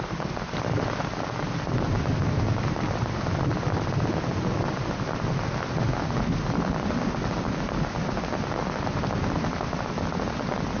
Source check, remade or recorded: recorded